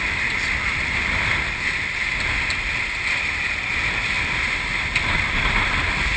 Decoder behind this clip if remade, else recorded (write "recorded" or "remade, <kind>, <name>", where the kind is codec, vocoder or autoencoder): recorded